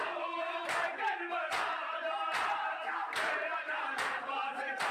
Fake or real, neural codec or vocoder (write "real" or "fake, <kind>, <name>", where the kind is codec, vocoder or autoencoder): fake, vocoder, BigVGAN v2